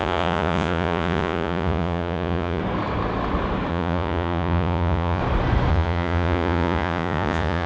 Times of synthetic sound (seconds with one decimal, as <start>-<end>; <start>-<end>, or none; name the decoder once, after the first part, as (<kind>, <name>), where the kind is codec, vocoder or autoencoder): 0.0-2.6 (vocoder, Vocos); 3.7-5.2; 5.7-7.7